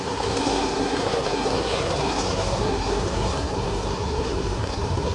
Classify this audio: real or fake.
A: fake